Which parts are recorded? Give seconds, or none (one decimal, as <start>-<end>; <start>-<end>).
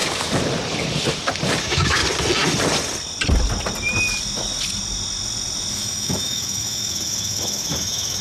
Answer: 0.0-1.6; 2.0-5.7